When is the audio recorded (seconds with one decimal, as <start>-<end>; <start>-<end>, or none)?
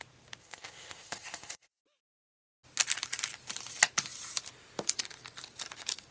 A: 0.0-0.4; 1.8-6.1